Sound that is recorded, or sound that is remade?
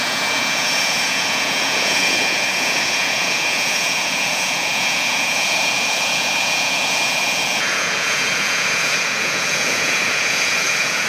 remade